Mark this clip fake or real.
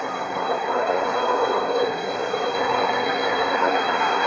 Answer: fake